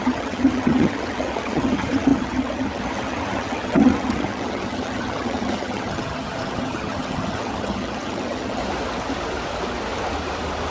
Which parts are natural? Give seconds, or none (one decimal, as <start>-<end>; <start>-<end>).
8.6-10.7